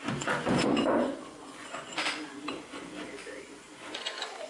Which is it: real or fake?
fake